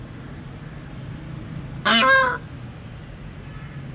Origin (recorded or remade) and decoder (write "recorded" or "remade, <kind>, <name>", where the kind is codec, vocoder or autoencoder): recorded